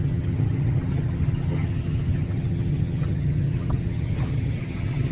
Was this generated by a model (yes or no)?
yes